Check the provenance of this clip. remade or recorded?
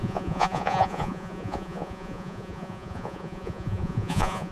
remade